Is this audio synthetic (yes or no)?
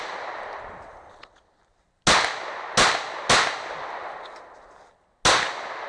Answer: no